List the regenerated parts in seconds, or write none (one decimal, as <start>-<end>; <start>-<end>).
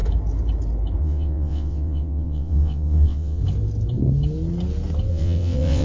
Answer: 1.0-3.4; 5.1-5.8